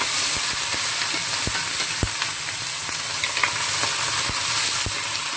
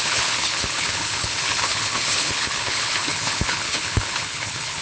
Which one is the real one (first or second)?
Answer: first